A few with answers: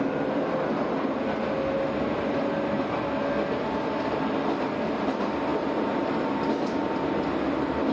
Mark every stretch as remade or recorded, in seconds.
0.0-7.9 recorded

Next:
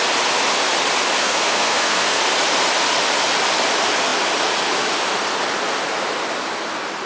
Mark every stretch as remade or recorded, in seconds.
0.0-1.2 recorded; 1.2-2.2 remade; 2.2-7.1 recorded

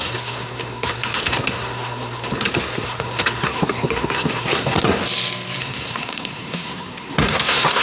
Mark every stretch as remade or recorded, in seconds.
0.0-5.0 remade; 5.0-5.6 recorded; 5.6-7.8 remade

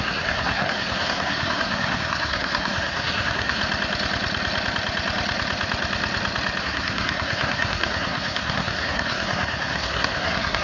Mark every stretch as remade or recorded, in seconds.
0.0-3.6 remade; 3.6-6.6 recorded; 6.6-10.6 remade